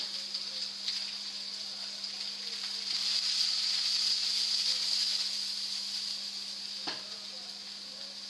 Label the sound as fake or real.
real